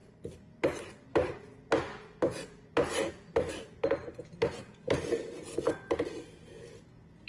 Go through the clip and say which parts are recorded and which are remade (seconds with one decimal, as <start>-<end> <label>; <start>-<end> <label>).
0.0-7.3 recorded